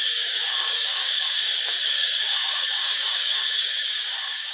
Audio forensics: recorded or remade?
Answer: remade